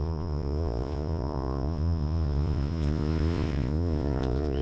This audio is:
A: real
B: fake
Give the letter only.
B